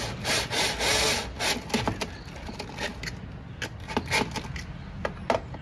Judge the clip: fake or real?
real